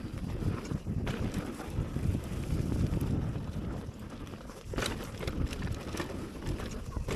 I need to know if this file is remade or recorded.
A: remade